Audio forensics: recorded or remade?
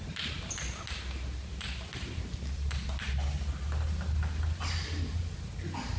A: recorded